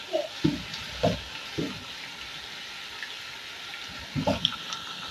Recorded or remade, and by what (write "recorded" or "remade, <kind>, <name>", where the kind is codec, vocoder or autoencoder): recorded